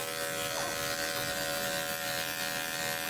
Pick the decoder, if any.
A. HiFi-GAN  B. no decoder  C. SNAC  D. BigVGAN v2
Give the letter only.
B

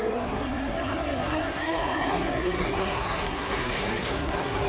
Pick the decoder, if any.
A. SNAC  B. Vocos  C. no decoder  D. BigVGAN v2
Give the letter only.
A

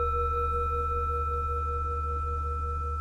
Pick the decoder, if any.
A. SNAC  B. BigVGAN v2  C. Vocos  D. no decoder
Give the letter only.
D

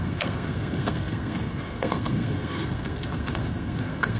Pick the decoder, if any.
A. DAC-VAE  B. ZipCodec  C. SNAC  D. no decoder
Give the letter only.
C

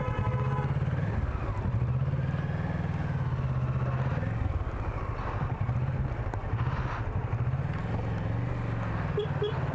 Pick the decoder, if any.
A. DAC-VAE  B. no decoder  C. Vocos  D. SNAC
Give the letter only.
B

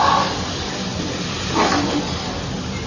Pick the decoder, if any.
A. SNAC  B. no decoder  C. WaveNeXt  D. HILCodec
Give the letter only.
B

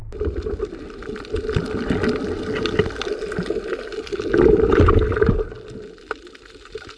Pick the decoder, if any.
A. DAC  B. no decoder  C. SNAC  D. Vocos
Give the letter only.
B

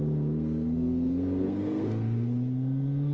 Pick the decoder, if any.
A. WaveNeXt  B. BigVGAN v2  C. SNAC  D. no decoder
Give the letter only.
C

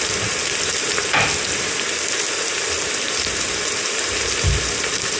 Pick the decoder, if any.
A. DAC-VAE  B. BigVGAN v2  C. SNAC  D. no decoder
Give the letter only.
D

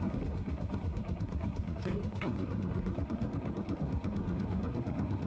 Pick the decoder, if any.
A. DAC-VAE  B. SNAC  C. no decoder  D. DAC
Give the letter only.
B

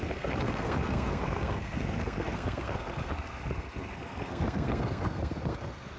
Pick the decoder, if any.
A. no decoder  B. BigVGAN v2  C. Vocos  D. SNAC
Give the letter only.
D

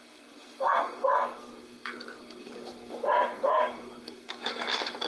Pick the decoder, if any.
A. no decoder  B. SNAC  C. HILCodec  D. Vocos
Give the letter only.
B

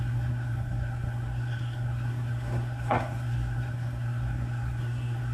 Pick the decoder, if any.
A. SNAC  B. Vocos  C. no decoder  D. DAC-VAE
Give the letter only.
A